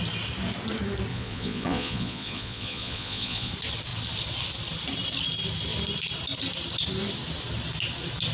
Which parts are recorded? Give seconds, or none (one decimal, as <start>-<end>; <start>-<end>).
0.0-1.1; 3.5-8.3